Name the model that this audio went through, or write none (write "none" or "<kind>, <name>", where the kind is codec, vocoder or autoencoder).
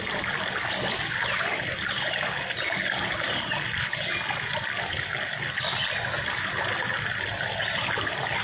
none